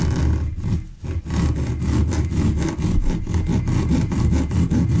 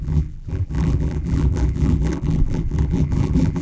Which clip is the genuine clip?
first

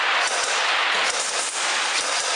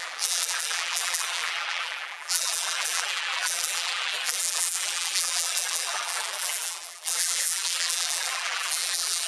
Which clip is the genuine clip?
first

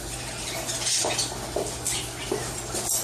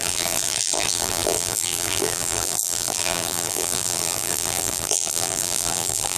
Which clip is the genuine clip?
first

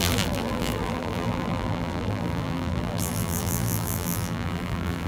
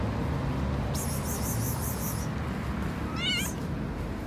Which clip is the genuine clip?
second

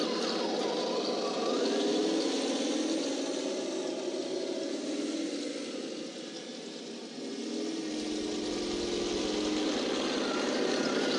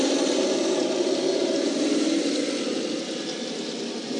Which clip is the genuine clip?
first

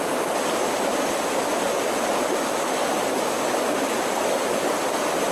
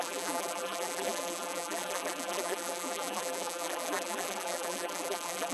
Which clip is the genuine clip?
first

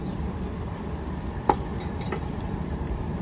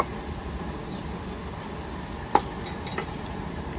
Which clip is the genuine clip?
second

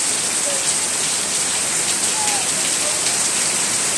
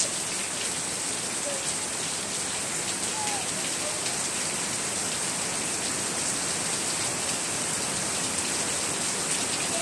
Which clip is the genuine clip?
second